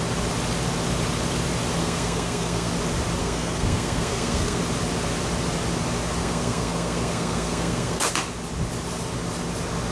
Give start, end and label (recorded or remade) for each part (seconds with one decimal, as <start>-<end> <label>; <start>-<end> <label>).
0.0-1.8 recorded; 1.8-2.7 remade; 2.7-3.2 recorded; 3.2-4.6 remade; 4.6-6.2 recorded; 6.2-8.1 remade; 8.1-9.9 recorded